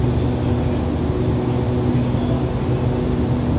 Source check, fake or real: real